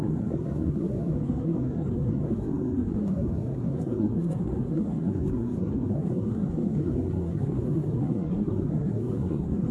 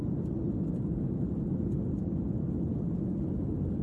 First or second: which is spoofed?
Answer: first